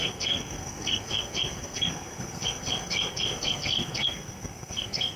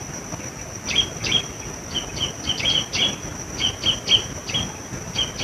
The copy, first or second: first